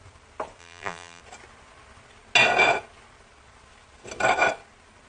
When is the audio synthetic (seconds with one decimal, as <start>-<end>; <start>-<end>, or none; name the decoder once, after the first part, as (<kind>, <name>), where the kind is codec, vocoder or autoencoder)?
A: 0.6-1.2 (vocoder, BigVGAN v2)